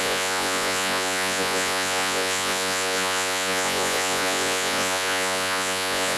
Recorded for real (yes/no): no